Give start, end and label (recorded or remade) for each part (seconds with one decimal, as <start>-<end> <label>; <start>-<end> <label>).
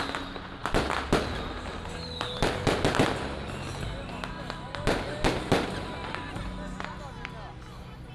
0.0-8.1 recorded